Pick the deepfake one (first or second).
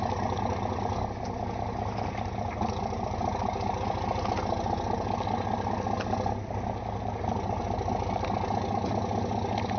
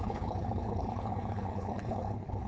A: second